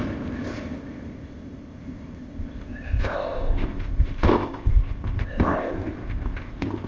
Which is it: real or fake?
fake